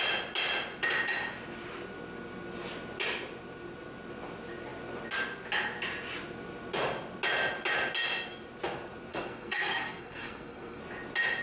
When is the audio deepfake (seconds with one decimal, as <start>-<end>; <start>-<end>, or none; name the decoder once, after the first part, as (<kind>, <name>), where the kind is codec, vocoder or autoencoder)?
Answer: 9.1-10.8 (codec, SNAC)